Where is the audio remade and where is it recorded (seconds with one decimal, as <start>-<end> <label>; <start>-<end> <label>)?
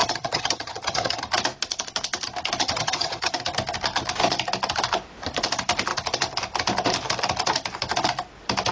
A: 0.0-1.2 remade; 1.2-2.6 recorded; 2.6-3.3 remade; 3.3-8.7 recorded